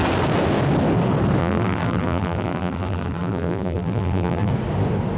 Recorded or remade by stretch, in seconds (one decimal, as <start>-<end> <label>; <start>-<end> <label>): 0.0-1.4 recorded; 1.4-4.5 remade; 4.5-5.2 recorded